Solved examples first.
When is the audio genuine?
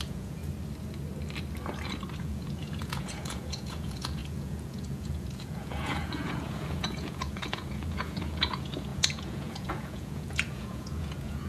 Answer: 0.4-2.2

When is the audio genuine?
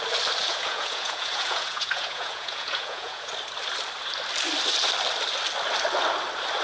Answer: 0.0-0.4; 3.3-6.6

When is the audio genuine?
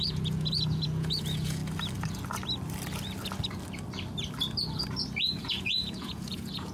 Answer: 1.6-5.4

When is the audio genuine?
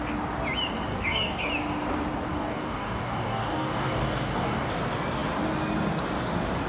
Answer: 0.0-0.9; 1.5-2.3; 4.7-6.7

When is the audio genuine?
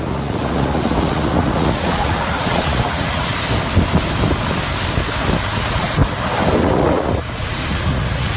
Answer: 3.3-5.4; 6.0-6.6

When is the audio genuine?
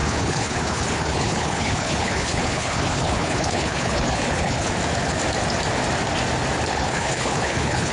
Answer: 4.7-6.7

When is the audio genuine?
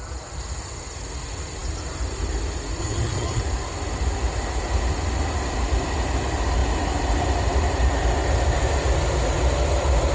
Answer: 0.0-2.8; 3.4-10.1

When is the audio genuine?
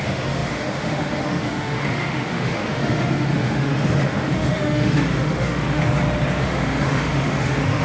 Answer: 5.8-6.4